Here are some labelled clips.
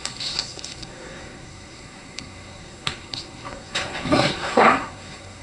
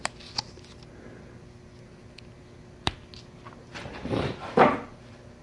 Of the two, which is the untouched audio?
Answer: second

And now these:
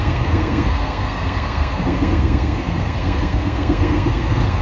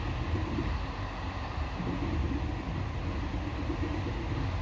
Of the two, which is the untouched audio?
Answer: second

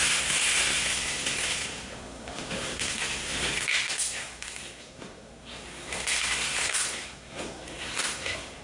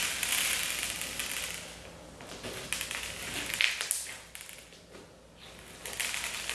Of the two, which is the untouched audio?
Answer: second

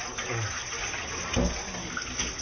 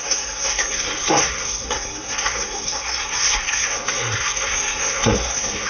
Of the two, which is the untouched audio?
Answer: first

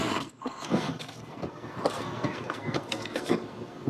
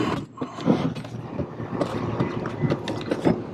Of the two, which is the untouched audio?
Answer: second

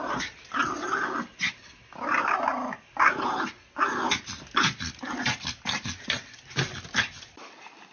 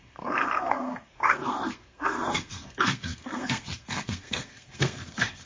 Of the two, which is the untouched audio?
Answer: first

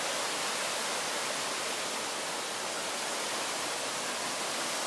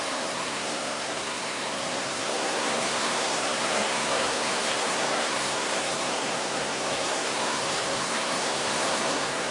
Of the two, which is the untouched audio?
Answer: first